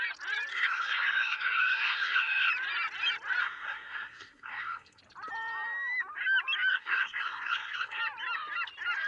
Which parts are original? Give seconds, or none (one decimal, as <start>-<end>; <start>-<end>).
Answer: 0.0-0.5; 2.5-3.4; 5.0-6.7; 8.0-9.1